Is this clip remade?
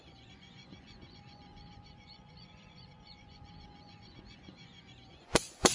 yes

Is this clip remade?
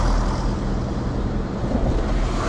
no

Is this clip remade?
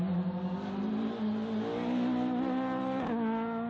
no